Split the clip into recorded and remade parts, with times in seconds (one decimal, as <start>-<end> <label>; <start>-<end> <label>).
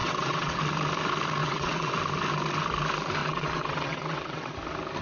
0.0-0.6 remade; 0.6-1.4 recorded; 1.4-1.9 remade; 1.9-3.2 recorded; 3.2-4.5 remade; 4.5-5.0 recorded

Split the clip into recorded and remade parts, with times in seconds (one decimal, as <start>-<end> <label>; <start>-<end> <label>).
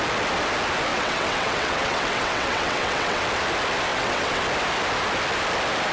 0.0-0.9 recorded; 0.9-3.2 remade; 3.2-3.9 recorded; 3.9-4.4 remade; 4.4-5.9 recorded